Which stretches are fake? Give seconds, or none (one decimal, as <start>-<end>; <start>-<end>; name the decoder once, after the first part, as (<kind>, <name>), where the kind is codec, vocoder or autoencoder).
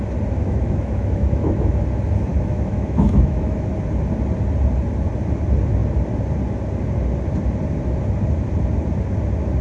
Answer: 0.4-1.8 (autoencoder, DAC-VAE); 2.3-3.7